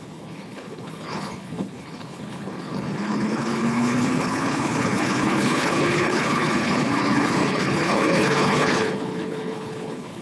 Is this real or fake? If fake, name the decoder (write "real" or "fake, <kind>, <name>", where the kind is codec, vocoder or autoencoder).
fake, codec, HILCodec